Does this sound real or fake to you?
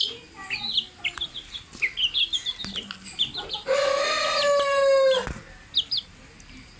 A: real